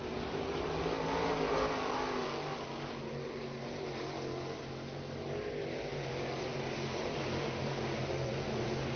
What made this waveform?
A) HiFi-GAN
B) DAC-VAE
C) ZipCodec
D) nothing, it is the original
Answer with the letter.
D